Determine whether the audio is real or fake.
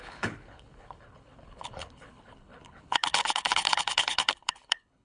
fake